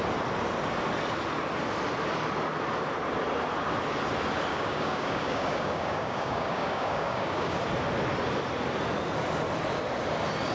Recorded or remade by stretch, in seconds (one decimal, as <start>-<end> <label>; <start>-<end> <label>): 0.0-4.5 recorded; 4.5-7.6 remade; 7.6-10.5 recorded